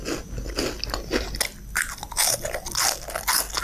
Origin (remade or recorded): recorded